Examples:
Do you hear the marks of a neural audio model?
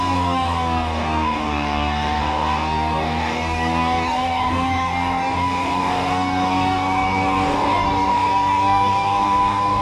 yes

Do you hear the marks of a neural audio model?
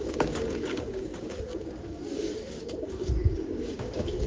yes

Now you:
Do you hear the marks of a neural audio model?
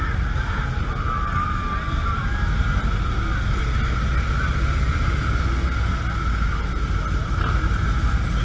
no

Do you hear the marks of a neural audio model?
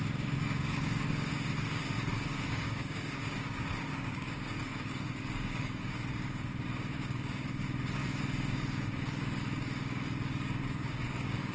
yes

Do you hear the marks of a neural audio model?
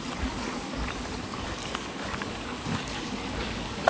yes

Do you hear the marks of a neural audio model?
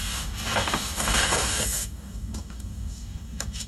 yes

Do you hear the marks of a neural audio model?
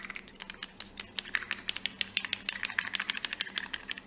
no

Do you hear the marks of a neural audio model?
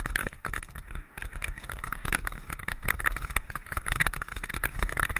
yes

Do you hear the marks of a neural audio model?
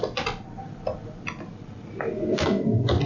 no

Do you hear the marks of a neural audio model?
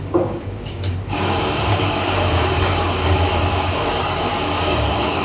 yes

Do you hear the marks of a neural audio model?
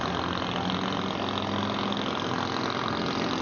no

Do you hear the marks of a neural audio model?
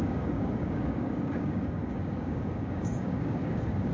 yes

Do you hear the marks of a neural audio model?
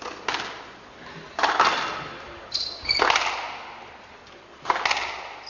no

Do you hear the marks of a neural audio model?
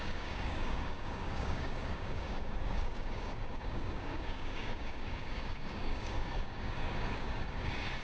yes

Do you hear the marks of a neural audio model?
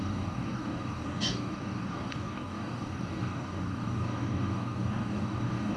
yes